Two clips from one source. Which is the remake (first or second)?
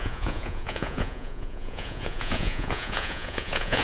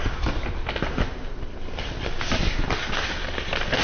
first